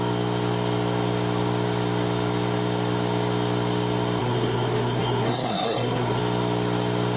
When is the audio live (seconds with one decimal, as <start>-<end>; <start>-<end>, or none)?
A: 0.0-4.2; 6.2-7.2